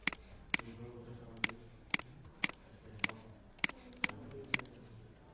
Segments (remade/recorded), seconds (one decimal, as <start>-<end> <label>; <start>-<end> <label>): 0.0-5.3 recorded